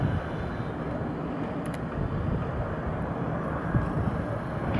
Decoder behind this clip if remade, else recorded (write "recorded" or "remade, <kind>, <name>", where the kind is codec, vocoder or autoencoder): recorded